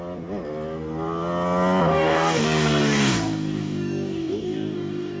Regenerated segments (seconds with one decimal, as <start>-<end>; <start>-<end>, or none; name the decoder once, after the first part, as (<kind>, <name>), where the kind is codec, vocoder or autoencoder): 1.9-5.2 (codec, DAC)